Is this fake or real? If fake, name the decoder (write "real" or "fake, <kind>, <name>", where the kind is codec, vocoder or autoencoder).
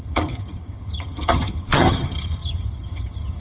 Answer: fake, vocoder, HiFi-GAN